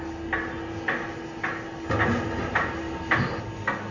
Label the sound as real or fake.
real